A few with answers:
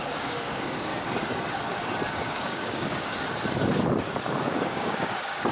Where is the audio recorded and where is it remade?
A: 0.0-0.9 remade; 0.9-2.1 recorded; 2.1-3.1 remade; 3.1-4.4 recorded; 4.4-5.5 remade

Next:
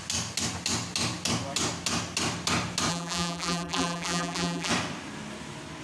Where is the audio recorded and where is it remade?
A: 0.0-2.9 recorded; 2.9-4.7 remade; 4.7-5.8 recorded

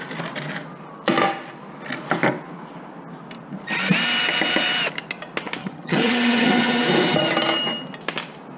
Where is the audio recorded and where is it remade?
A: 0.0-5.6 recorded; 5.6-6.8 remade; 6.8-8.6 recorded